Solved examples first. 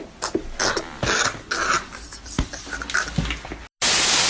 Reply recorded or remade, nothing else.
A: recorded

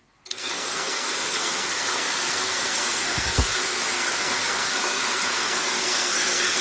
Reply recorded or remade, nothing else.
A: remade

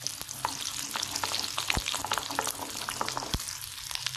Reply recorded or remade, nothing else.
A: recorded